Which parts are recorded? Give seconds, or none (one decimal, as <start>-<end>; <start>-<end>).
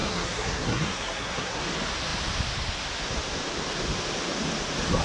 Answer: 1.6-5.0